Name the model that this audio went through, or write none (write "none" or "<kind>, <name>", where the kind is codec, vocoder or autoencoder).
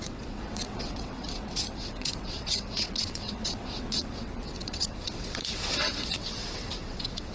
vocoder, WaveNeXt